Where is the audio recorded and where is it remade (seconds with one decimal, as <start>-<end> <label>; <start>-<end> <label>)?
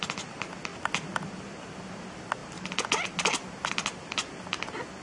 0.0-5.0 recorded